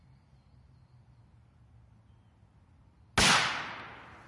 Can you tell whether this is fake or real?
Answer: real